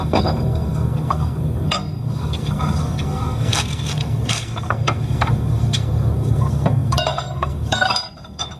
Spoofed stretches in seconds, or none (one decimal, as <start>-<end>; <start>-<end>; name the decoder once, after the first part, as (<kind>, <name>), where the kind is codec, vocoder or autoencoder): 0.0-8.6 (codec, SNAC)